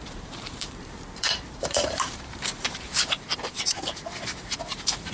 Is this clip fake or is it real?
fake